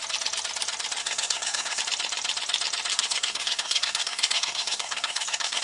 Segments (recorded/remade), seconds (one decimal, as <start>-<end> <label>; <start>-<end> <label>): 0.0-1.0 recorded; 1.0-1.8 remade; 1.8-2.9 recorded; 2.9-5.6 remade